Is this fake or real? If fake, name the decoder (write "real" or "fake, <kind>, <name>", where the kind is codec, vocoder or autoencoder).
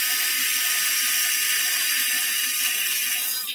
real